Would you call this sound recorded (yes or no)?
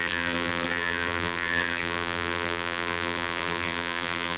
no